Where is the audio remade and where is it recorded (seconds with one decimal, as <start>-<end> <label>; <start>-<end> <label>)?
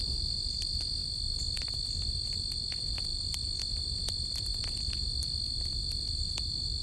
0.0-6.8 recorded